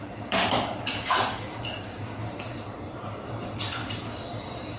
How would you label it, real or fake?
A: fake